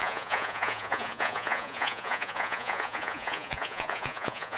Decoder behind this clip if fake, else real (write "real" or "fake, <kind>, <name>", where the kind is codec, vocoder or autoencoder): fake, vocoder, Vocos